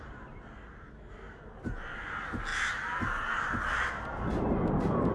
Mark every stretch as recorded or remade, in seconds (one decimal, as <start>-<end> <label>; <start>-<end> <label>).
0.0-5.1 recorded